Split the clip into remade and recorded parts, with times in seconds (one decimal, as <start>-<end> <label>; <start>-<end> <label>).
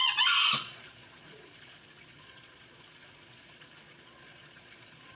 0.0-5.2 remade